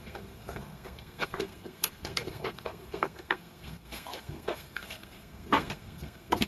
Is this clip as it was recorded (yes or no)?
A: no